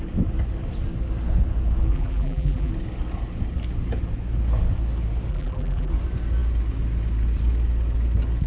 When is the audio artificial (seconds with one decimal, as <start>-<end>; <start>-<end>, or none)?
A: 1.9-2.7; 5.3-5.9